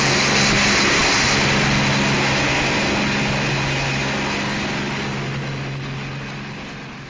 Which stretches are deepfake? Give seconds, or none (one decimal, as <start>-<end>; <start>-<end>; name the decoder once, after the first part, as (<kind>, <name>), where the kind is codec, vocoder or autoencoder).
none